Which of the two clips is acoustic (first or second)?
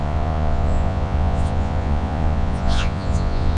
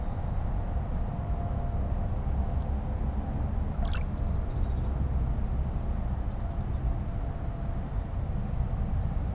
second